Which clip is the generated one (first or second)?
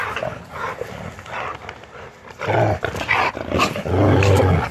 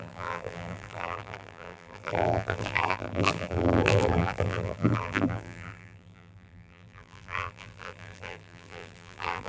second